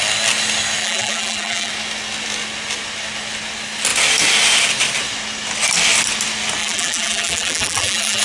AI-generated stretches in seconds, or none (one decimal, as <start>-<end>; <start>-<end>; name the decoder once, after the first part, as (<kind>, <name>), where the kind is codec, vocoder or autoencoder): 0.8-1.7 (vocoder, BigVGAN v2); 6.6-8.2